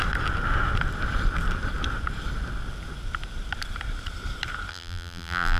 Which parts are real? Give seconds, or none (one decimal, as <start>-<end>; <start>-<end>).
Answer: 0.0-4.7